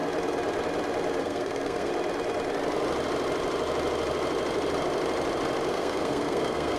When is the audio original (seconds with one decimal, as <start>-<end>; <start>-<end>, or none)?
0.0-1.2; 1.9-5.7